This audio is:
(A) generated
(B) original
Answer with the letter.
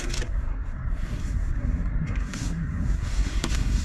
A